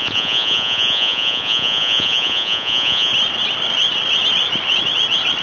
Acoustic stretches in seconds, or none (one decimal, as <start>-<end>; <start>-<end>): 3.1-5.4